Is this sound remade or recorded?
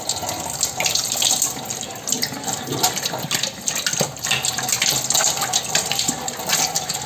recorded